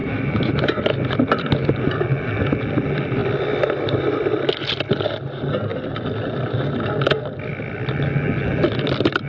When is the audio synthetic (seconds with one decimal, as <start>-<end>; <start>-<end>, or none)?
0.0-0.5